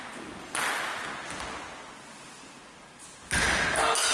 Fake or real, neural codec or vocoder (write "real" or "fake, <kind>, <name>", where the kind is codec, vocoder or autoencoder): real